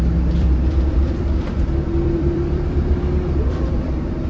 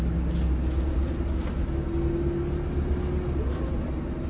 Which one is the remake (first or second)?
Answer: first